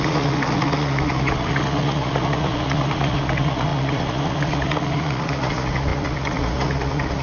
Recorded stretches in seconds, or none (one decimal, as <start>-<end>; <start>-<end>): none